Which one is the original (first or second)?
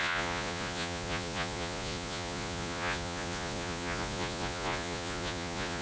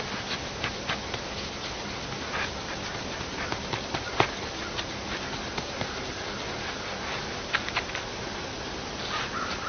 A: second